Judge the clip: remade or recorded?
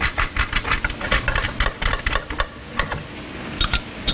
recorded